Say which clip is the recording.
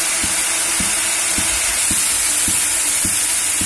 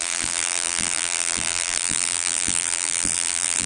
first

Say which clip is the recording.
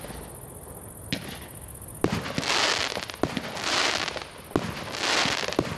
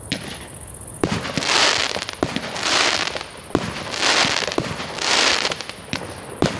first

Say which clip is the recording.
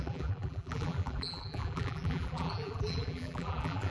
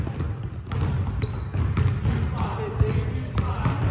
second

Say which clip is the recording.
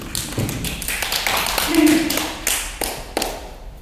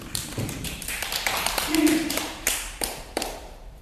first